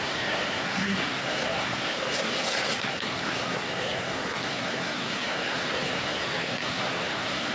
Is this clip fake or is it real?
fake